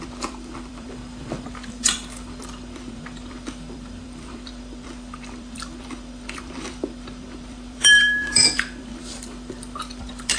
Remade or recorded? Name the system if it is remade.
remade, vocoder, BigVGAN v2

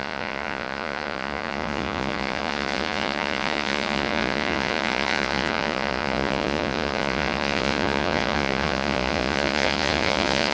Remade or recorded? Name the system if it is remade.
remade, vocoder, Vocos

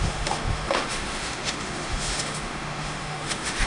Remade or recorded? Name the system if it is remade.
remade, autoencoder, DAC-VAE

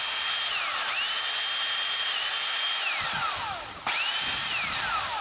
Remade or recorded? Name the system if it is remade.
recorded